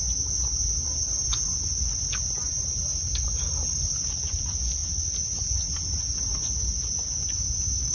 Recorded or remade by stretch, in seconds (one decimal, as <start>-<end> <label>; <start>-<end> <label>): 0.0-7.9 recorded